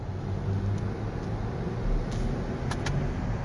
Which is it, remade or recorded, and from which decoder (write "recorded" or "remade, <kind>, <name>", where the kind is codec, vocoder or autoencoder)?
recorded